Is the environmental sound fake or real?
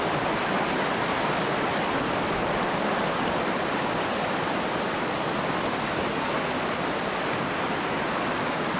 real